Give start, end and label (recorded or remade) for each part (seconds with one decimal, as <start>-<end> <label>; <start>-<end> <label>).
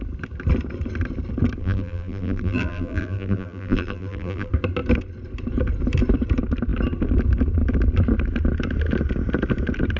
0.0-1.6 recorded; 1.6-4.5 remade; 4.5-10.0 recorded